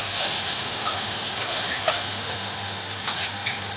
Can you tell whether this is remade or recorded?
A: remade